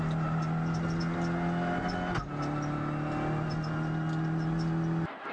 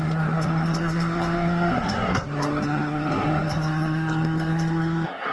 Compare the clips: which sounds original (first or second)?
first